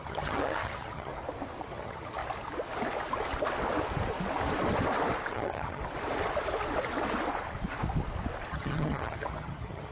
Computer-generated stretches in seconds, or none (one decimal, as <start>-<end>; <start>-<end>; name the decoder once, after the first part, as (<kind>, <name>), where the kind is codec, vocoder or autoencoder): 0.0-1.1 (vocoder, HiFi-GAN); 1.6-2.2; 5.3-5.8; 8.5-9.9